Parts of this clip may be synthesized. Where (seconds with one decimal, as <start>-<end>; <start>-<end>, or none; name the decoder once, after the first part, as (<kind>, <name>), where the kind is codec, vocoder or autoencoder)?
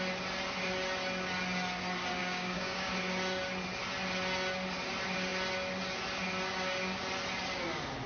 2.2-2.9 (codec, DAC)